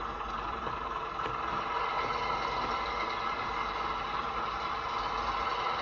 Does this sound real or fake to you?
real